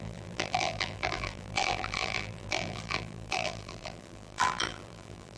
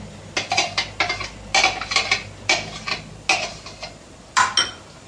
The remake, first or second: first